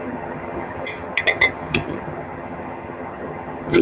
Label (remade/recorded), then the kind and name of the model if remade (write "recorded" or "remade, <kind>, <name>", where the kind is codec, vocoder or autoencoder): remade, vocoder, HiFi-GAN